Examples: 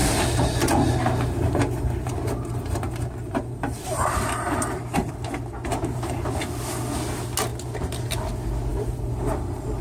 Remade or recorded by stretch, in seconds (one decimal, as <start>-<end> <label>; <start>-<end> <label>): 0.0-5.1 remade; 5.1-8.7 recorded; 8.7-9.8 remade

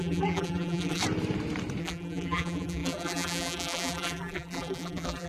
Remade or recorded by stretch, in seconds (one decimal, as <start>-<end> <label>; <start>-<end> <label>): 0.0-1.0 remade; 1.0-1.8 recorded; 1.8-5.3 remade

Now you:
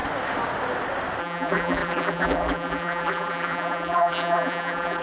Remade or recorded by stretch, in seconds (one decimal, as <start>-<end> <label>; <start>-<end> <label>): 0.0-1.2 recorded; 1.2-5.0 remade

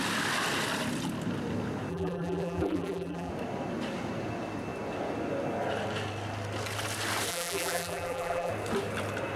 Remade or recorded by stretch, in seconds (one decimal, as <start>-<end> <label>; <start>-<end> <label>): 0.0-1.9 recorded; 1.9-3.3 remade; 3.3-7.3 recorded; 7.3-8.5 remade; 8.5-9.4 recorded

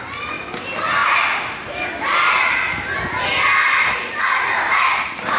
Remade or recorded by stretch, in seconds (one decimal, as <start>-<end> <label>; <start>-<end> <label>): 0.0-1.0 remade; 1.0-4.2 recorded; 4.2-5.4 remade